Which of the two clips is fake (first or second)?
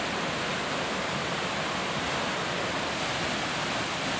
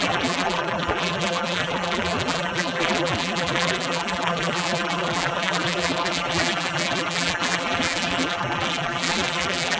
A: second